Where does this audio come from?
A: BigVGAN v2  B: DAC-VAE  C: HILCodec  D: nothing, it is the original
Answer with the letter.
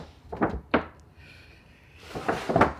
A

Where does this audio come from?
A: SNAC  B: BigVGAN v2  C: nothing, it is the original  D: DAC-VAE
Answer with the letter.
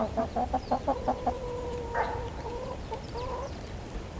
B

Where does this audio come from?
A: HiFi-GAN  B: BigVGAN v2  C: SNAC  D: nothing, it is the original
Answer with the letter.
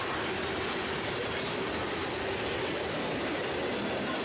D